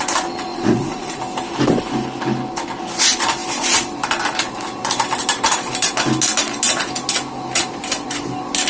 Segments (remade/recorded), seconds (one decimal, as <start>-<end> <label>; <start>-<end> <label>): 0.0-0.5 recorded; 0.5-1.2 remade; 1.2-8.7 recorded